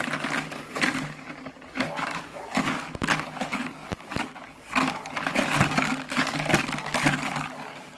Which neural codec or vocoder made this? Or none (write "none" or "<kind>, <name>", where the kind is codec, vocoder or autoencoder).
codec, DAC